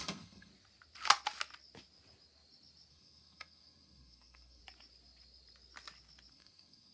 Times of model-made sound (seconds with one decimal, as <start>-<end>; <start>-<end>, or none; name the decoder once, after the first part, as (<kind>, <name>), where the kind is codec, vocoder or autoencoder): 0.0-0.5 (codec, SNAC); 2.9-4.6; 6.3-6.9